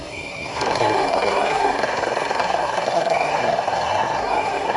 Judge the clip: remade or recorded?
remade